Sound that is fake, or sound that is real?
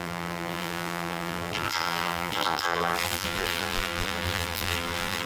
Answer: fake